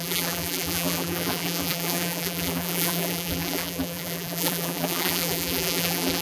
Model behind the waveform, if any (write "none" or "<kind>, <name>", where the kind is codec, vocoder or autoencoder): vocoder, BigVGAN v2